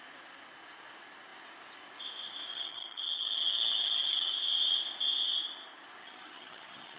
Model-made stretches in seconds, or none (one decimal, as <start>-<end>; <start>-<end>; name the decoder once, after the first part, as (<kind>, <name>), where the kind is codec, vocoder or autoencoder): 2.5-4.3 (vocoder, HiFi-GAN); 6.0-7.0